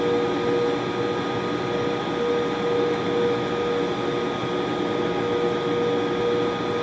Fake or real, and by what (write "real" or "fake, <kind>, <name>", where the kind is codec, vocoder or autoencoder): real